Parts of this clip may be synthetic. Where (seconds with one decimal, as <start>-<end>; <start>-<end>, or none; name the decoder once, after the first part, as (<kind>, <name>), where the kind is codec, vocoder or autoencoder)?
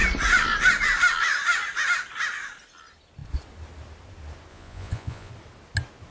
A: 4.5-5.3 (vocoder, Vocos)